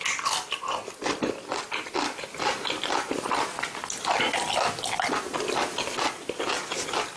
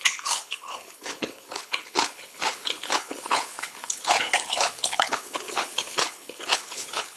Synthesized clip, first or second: second